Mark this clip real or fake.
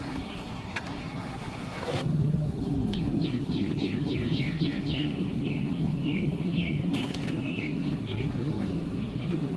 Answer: fake